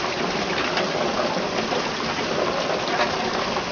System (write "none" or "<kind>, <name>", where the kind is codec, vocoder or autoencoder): none